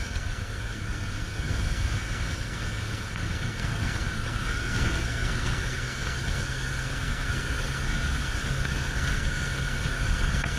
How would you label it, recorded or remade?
remade